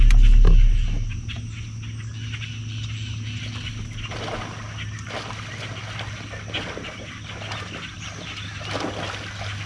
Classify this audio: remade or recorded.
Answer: recorded